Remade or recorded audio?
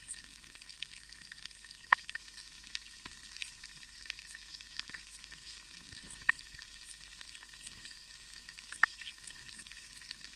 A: remade